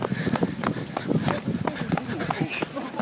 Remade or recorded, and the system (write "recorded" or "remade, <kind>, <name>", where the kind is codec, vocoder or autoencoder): recorded